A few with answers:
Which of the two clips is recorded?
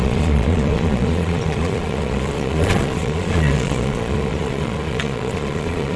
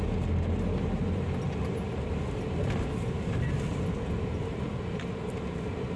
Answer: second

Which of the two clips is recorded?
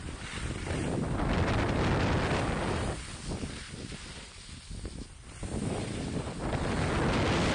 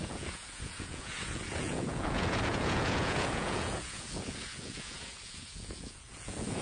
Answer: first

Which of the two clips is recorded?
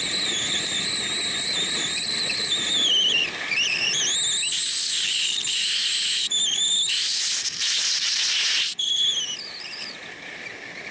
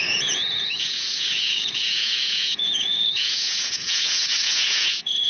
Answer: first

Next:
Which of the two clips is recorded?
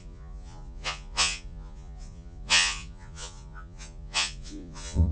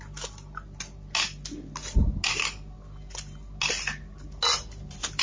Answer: second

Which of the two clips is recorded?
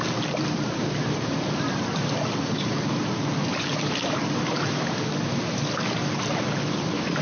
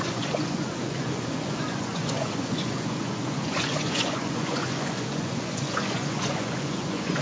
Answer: first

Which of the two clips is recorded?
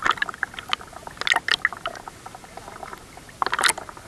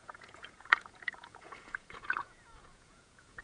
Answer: first